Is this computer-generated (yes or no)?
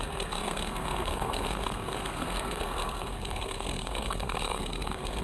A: yes